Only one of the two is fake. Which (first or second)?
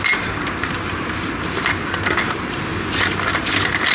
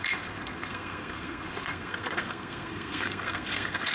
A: second